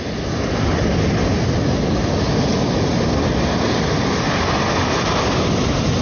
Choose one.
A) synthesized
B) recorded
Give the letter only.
B